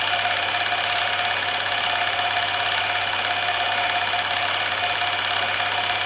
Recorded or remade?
recorded